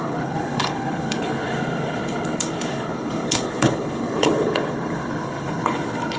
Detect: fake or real fake